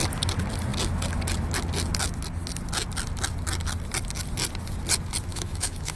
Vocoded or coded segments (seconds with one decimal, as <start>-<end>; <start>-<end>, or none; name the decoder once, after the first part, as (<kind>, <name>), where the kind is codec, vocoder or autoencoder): 5.3-6.0 (autoencoder, DAC-VAE)